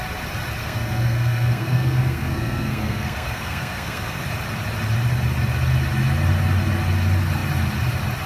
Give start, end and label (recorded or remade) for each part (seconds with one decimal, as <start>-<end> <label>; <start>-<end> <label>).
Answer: 0.0-0.6 recorded; 0.6-4.2 remade; 4.2-8.3 recorded